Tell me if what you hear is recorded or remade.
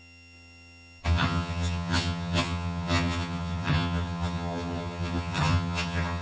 remade